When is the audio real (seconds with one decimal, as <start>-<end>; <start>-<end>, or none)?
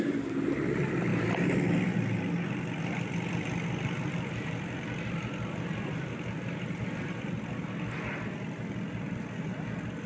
0.0-10.1